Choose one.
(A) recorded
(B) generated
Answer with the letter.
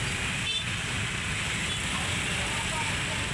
A